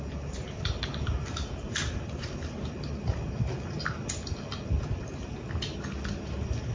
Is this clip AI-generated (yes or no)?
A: no